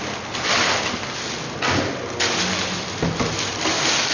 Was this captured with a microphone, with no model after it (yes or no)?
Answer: yes